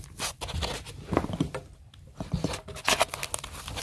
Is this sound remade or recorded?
recorded